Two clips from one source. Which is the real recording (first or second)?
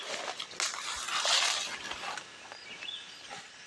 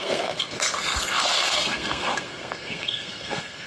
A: first